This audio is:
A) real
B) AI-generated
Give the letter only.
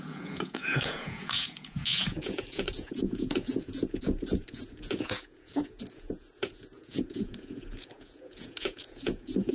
B